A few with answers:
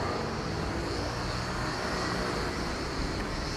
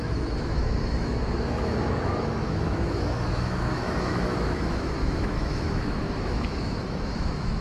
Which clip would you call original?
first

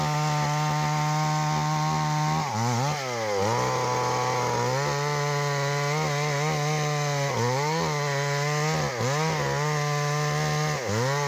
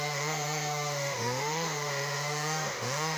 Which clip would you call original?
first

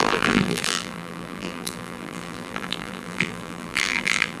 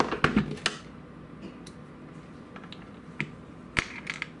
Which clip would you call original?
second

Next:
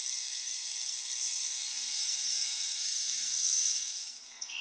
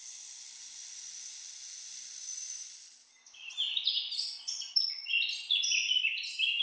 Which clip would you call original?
second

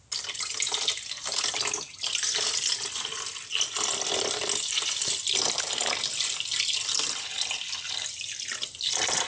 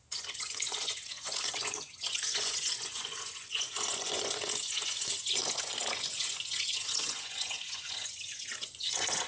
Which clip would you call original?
first